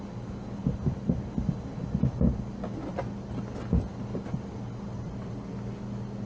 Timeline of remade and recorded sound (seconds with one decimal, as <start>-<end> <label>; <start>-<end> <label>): 0.0-6.3 recorded